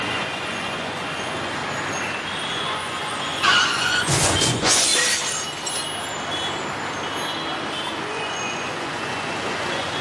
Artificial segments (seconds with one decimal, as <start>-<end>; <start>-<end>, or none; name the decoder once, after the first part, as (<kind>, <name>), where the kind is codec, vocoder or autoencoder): 0.0-1.6 (vocoder, Vocos); 2.5-4.9; 8.0-10.0